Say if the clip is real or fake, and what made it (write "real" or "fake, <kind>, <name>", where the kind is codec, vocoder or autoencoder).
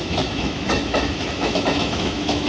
fake, autoencoder, DAC-VAE